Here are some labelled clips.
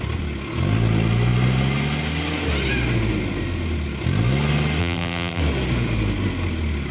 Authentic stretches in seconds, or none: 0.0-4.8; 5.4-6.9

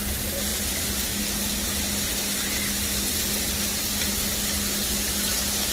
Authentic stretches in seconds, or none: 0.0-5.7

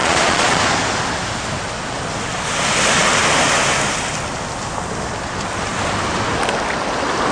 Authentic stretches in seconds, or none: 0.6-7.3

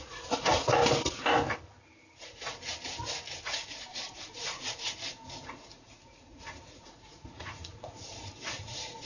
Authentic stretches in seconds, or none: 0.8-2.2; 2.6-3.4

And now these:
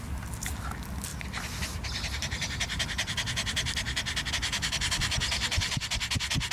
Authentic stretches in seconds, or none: 0.0-6.5

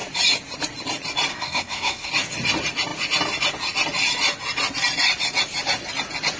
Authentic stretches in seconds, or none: 0.0-1.3; 2.1-6.4

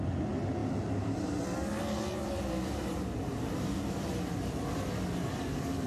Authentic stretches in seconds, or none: 0.0-0.6; 1.4-5.9

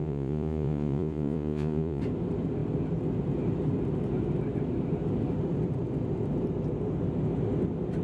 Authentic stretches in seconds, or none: 2.0-8.0